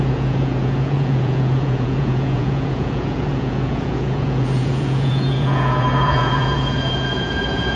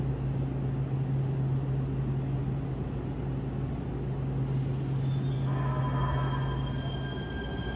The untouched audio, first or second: second